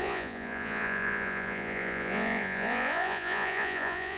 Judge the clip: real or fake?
fake